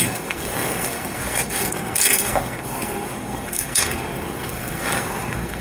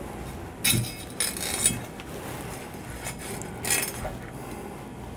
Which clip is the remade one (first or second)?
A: first